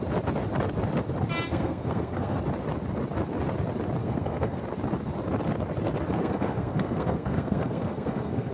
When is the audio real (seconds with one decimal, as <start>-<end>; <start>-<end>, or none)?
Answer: 0.0-1.5; 2.4-4.0; 4.6-6.2